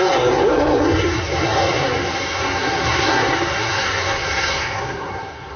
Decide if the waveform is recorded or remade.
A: remade